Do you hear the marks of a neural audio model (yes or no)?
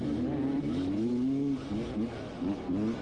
no